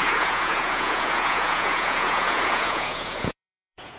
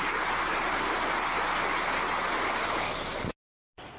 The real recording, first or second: second